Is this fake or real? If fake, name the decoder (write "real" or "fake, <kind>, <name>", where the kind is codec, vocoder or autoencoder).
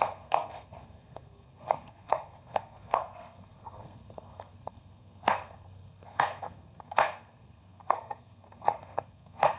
fake, codec, SNAC